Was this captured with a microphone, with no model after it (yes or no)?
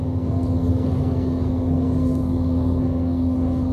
no